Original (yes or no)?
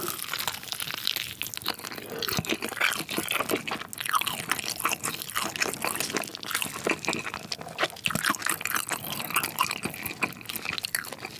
yes